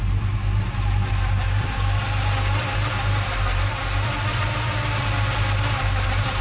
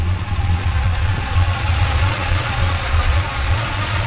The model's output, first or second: second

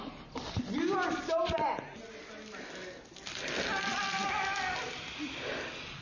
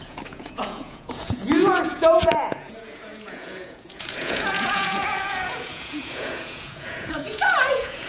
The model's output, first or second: second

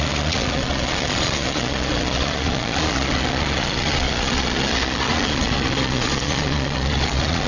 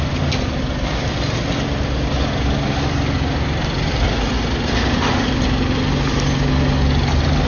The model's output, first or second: first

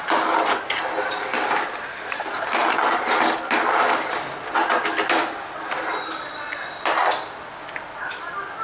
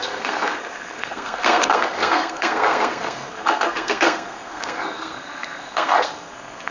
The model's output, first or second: second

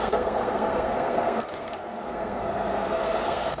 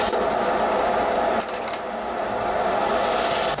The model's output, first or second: first